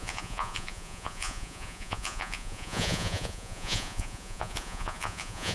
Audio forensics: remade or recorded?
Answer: remade